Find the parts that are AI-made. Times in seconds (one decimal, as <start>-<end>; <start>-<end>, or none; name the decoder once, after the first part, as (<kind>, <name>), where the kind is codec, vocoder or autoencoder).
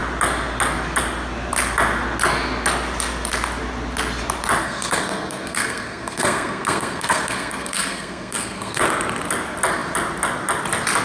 4.6-8.8 (codec, SNAC)